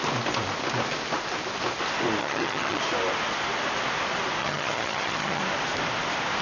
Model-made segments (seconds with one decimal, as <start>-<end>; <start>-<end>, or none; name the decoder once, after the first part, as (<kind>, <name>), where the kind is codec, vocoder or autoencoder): 2.2-2.8 (vocoder, HiFi-GAN); 4.4-5.4